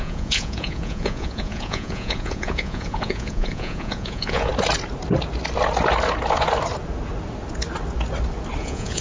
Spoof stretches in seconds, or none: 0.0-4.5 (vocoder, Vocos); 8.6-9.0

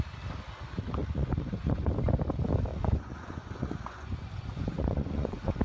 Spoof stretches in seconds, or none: 1.0-1.9 (vocoder, Vocos); 2.7-5.6

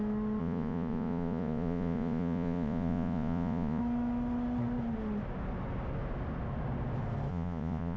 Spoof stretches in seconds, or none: 0.4-3.8 (vocoder, Vocos); 7.3-8.0

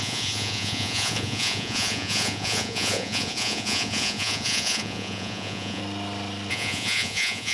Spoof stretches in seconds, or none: 0.0-5.8 (vocoder, Vocos); 6.5-7.5

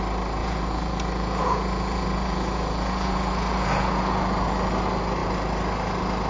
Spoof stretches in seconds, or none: 0.4-4.2 (vocoder, Vocos)

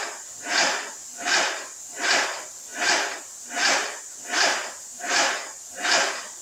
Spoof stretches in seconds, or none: none

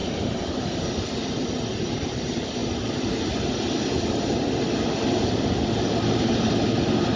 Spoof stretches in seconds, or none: none

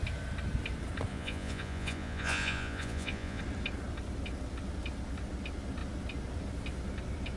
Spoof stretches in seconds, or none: 1.1-3.4 (vocoder, Vocos)